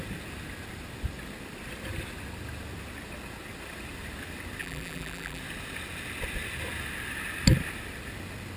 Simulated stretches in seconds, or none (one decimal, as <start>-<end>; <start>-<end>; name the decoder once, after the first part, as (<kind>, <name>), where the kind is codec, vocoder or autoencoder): 4.6-5.4 (vocoder, BigVGAN v2)